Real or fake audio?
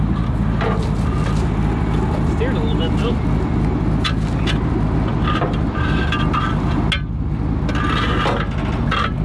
real